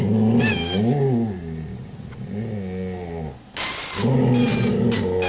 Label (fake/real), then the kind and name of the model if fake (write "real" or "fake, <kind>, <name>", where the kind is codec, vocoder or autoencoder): real